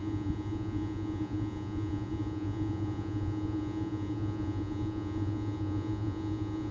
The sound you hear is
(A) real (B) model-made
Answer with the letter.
B